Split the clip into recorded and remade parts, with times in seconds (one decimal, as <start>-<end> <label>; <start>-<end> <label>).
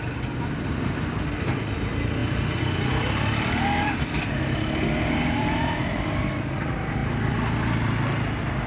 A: 0.0-8.7 recorded